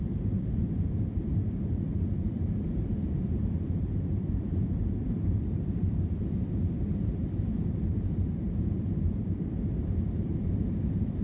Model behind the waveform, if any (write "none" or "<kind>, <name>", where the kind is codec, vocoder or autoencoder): vocoder, BigVGAN v2